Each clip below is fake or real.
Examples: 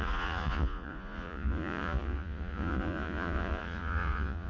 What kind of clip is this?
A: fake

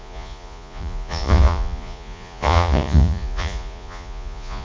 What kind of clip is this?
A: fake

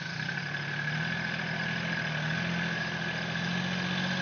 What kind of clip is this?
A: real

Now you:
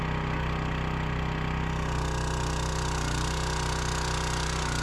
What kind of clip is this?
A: real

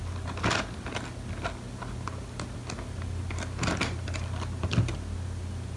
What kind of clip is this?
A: real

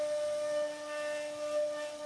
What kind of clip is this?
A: real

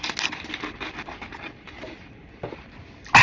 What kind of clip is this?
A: real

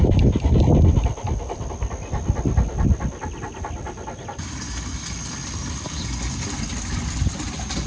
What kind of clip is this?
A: real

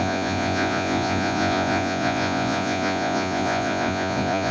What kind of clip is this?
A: fake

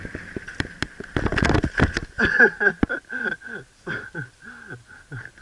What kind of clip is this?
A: real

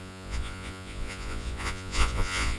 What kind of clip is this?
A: fake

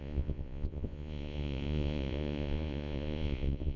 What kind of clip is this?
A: fake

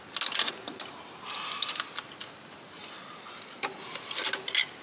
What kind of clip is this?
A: real